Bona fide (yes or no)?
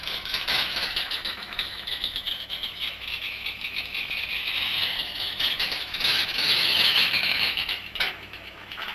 no